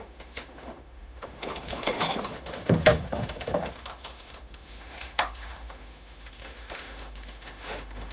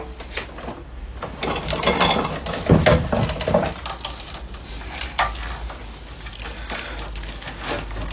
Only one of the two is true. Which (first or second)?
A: second